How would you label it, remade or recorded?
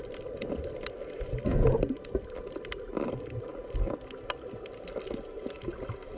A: recorded